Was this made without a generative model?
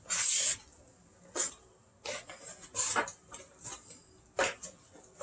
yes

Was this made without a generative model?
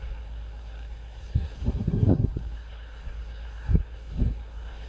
no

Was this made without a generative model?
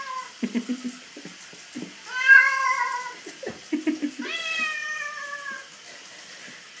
yes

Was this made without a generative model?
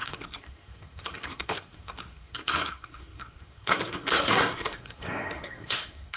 no